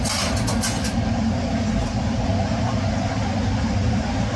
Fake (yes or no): no